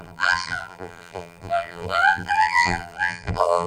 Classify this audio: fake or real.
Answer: fake